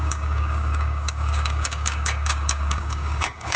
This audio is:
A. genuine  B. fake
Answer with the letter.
B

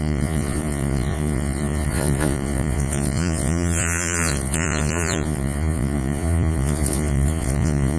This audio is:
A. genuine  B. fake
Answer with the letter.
B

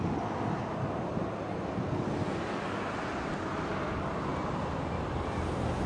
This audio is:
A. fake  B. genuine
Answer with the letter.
B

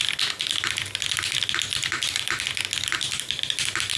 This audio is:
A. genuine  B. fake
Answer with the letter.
A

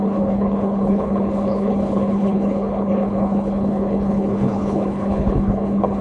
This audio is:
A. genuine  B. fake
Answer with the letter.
B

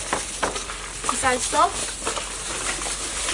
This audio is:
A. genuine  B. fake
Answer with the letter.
A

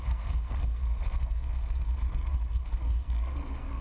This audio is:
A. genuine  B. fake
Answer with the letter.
B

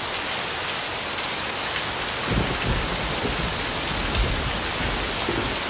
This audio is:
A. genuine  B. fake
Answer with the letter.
A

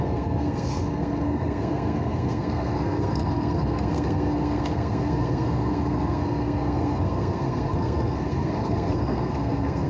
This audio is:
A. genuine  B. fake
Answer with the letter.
B